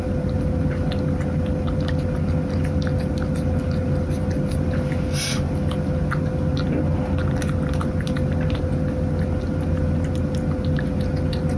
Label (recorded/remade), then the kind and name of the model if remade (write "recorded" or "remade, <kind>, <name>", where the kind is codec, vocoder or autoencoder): recorded